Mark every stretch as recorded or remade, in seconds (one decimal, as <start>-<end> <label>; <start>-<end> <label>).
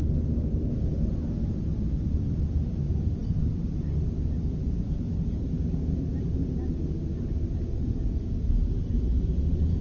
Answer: 0.0-9.8 recorded